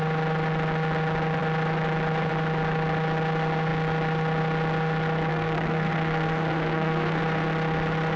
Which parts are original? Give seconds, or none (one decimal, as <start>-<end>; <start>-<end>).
0.0-5.3; 7.2-8.2